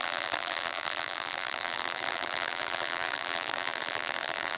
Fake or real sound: fake